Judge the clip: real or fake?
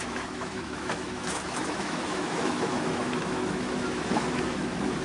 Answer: fake